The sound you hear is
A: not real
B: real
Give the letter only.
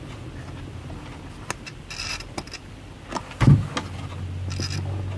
B